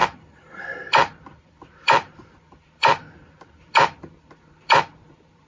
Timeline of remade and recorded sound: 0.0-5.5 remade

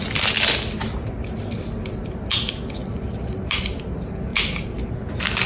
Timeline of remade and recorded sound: 0.0-0.8 recorded; 0.8-1.7 remade; 1.7-2.8 recorded; 2.8-3.6 remade; 3.6-4.3 recorded; 4.3-4.9 remade; 4.9-5.5 recorded

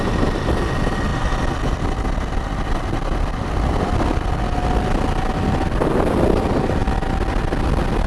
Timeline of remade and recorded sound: 0.0-8.1 recorded

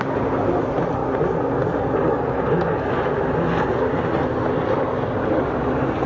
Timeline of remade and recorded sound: 0.0-6.1 recorded

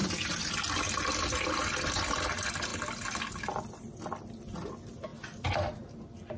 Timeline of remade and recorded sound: 0.0-0.7 recorded; 0.7-2.7 remade; 2.7-4.5 recorded; 4.5-6.4 remade

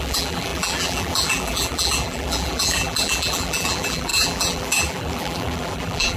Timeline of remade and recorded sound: 0.0-6.2 remade